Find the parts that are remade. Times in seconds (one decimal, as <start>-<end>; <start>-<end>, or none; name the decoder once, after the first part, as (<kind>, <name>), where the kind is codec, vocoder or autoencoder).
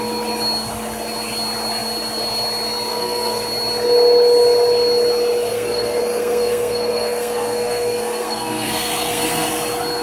2.9-3.4 (codec, SNAC); 5.5-9.5